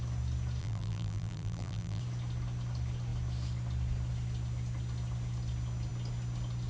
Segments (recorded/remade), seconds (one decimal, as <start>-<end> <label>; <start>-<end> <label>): 0.0-0.6 recorded; 0.6-2.0 remade; 2.0-6.7 recorded